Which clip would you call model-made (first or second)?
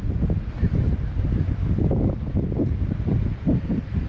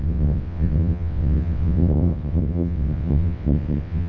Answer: second